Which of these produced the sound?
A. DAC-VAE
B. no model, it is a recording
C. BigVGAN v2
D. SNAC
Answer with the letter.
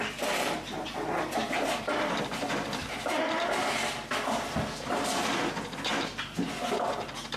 B